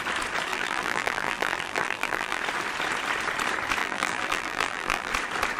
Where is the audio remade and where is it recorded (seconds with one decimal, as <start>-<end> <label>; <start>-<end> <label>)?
0.0-0.5 recorded; 0.5-2.4 remade; 2.4-3.8 recorded; 3.8-5.1 remade; 5.1-5.6 recorded